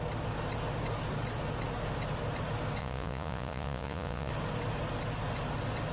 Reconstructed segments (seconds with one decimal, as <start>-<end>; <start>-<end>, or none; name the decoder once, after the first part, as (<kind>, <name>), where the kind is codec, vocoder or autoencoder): 2.8-4.3 (vocoder, Vocos)